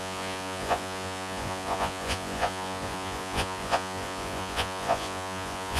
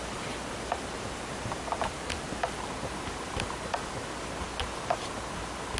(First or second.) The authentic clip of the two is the second